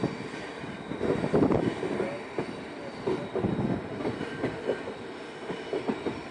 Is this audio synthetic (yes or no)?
no